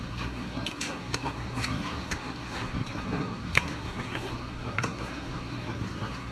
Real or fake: fake